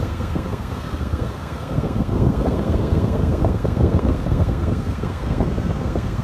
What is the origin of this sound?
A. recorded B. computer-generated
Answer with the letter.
B